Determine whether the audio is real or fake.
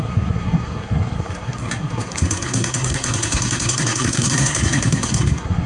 fake